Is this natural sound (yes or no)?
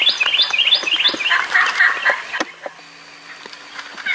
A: yes